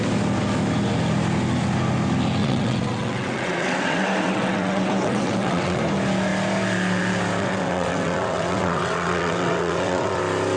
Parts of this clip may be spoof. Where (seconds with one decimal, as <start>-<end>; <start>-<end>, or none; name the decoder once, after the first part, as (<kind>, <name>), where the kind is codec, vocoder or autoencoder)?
2.4-5.8 (vocoder, WaveNeXt); 7.4-10.2